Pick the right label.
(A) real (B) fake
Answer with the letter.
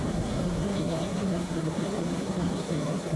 B